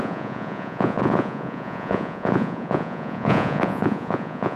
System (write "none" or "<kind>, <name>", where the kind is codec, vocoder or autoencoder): vocoder, Vocos